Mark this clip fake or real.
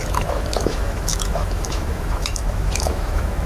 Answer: fake